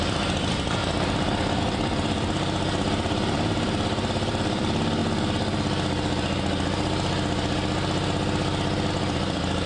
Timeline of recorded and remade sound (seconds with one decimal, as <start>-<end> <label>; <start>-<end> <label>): 0.0-0.8 remade; 0.8-1.6 recorded; 1.6-5.0 remade; 5.0-8.9 recorded; 8.9-9.7 remade